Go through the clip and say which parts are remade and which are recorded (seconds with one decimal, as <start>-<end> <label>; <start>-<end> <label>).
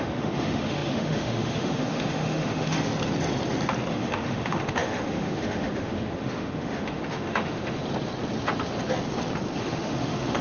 0.0-2.9 remade; 2.9-3.9 recorded; 3.9-7.8 remade; 7.8-9.6 recorded; 9.6-10.4 remade